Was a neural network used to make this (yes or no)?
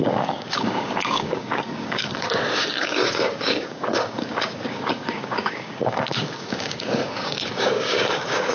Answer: yes